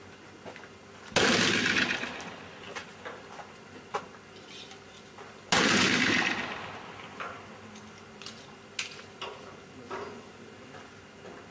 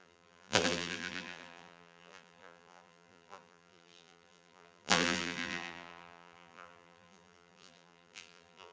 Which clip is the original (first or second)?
first